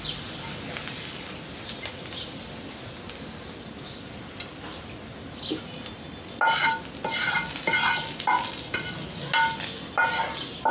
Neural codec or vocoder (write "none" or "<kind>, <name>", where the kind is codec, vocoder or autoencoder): none